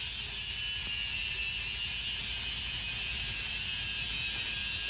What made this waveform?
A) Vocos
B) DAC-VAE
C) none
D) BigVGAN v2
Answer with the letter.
D